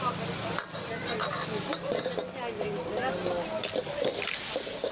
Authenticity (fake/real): real